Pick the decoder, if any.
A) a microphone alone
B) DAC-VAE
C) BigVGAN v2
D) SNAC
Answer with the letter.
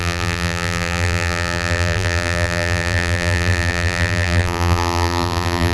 C